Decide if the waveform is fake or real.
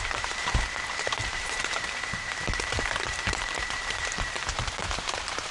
fake